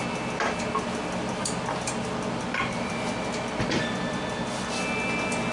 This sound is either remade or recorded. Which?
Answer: recorded